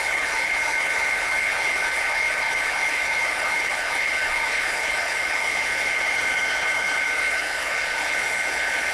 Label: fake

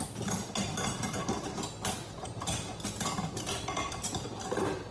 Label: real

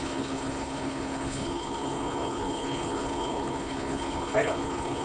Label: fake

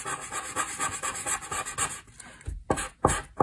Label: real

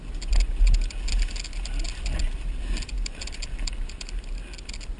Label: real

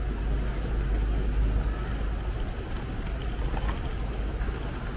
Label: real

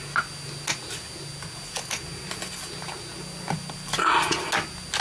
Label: real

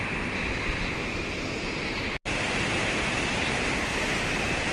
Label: real